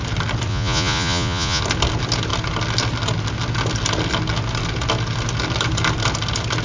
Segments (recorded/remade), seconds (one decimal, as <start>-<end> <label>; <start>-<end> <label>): 0.0-0.5 recorded; 0.5-1.6 remade; 1.6-6.6 recorded